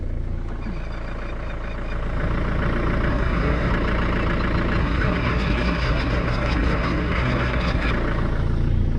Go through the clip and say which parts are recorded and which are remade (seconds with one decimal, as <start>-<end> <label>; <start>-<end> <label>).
0.0-3.1 recorded; 3.1-3.7 remade; 3.7-4.8 recorded; 4.8-7.9 remade; 7.9-9.0 recorded